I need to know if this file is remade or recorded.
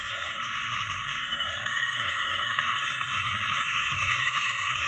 remade